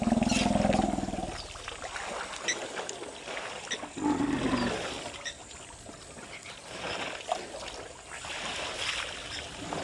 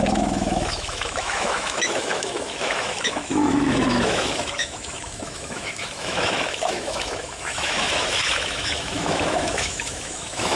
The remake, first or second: second